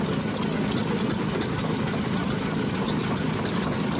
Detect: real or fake real